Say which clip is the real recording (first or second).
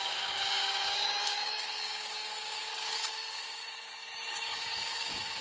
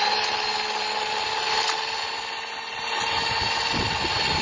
second